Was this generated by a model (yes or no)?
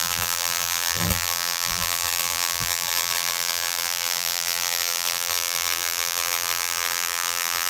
yes